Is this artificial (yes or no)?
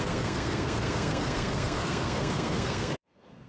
yes